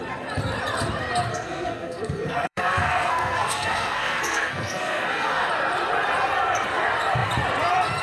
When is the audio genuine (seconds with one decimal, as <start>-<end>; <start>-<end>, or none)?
0.0-1.3; 5.5-8.0